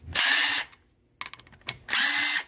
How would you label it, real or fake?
real